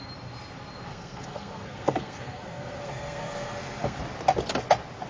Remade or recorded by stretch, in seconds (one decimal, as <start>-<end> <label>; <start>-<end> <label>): 0.0-0.9 recorded; 0.9-4.0 remade; 4.0-5.1 recorded

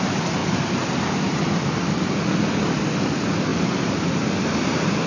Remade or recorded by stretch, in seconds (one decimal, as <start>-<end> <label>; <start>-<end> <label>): 0.0-5.1 recorded

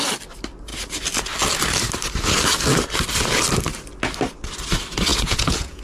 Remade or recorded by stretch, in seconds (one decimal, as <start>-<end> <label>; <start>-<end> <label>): 0.0-5.1 recorded; 5.1-5.8 remade

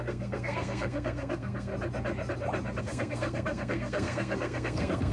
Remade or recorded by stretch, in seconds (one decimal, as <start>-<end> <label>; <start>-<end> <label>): 0.0-1.7 remade; 1.7-2.8 recorded; 2.8-5.1 remade

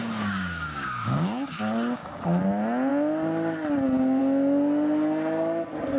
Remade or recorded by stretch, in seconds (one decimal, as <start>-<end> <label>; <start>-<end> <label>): 0.0-2.4 remade; 2.4-6.0 recorded